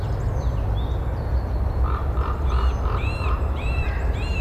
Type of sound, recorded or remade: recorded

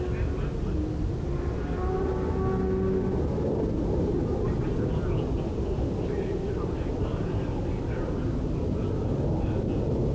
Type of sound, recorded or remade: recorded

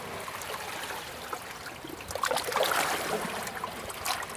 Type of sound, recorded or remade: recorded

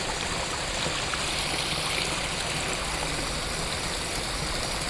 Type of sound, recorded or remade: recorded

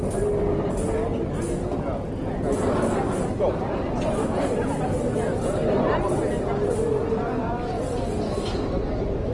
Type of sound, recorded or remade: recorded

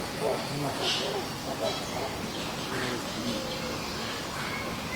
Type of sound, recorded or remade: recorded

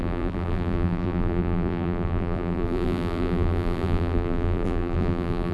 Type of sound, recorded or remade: remade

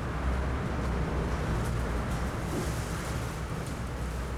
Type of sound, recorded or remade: recorded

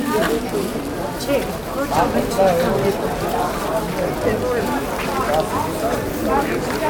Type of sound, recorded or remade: recorded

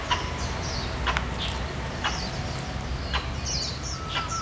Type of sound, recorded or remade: recorded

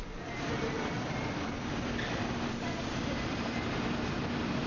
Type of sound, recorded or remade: remade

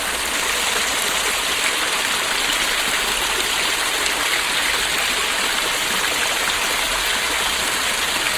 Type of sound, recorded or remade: recorded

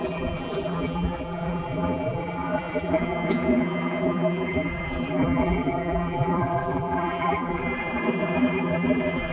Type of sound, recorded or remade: remade